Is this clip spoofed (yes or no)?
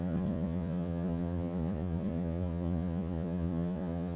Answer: yes